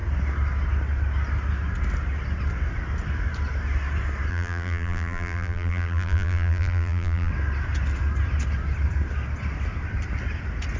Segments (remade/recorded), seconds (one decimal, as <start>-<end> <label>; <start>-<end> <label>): 0.0-4.3 recorded; 4.3-7.3 remade; 7.3-10.8 recorded